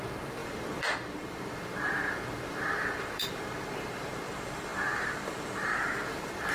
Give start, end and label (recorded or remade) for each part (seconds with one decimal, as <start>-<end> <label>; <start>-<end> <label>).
0.0-6.5 remade